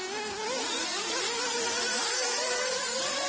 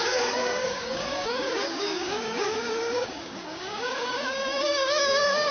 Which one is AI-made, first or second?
second